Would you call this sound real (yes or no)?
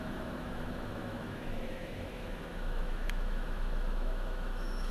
no